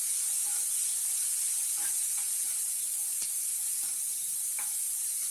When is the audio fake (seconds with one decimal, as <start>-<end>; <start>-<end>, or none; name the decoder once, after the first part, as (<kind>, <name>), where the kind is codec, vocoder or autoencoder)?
1.6-4.5 (vocoder, BigVGAN v2)